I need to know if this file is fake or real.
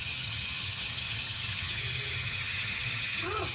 fake